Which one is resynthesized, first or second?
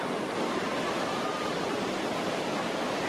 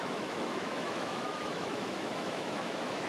second